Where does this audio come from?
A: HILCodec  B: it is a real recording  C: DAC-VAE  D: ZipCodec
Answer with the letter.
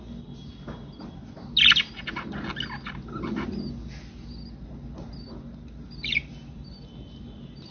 B